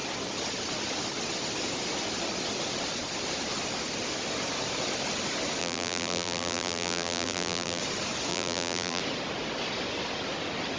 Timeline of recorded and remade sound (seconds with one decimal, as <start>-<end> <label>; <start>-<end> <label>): 0.0-5.6 recorded; 5.6-7.8 remade; 7.8-8.3 recorded; 8.3-9.0 remade; 9.0-10.8 recorded